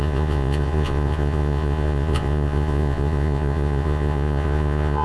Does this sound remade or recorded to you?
remade